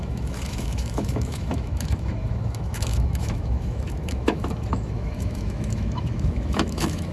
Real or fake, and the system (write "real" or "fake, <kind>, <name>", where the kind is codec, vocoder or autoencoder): fake, autoencoder, DAC-VAE